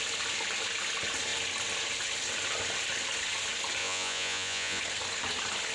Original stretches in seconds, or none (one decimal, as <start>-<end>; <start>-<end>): 0.0-3.8; 4.8-5.7